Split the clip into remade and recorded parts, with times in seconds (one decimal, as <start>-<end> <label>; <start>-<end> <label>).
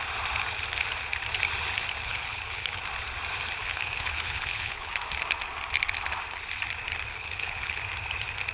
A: 0.0-2.1 recorded; 2.1-2.8 remade; 2.8-3.6 recorded; 3.6-4.9 remade; 4.9-7.1 recorded; 7.1-7.8 remade; 7.8-8.5 recorded